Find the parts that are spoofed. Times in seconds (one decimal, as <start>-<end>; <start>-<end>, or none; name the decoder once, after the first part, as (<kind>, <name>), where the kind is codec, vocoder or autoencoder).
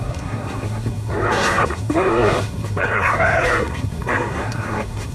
0.0-5.1 (codec, SNAC)